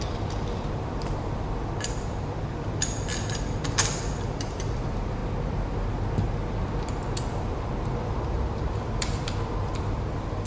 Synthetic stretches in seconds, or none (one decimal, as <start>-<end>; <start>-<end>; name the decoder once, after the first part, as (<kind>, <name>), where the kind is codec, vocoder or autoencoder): 0.0-5.2 (vocoder, BigVGAN v2); 7.2-10.5

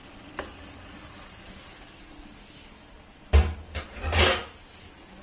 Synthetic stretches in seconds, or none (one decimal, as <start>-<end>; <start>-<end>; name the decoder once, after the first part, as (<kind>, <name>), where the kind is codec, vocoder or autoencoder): none

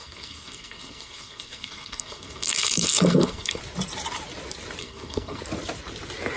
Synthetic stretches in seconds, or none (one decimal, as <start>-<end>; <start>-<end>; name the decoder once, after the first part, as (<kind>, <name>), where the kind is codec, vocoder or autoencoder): 0.0-3.6 (codec, SNAC); 4.8-5.4

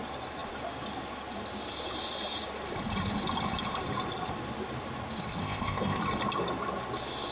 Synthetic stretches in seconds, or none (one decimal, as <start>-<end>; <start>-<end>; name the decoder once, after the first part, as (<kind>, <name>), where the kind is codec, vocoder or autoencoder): 5.4-6.0 (codec, ZipCodec)

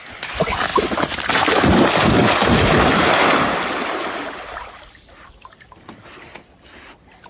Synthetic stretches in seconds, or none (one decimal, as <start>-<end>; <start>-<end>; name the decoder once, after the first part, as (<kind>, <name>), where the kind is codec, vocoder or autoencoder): none

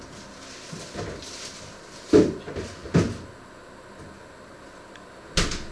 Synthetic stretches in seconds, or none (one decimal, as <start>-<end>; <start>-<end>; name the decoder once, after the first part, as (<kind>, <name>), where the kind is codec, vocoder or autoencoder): none

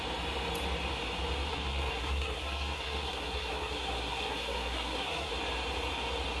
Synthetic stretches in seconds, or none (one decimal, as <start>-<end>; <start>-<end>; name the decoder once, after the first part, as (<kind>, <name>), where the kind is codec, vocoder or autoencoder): 1.5-5.3 (codec, SNAC)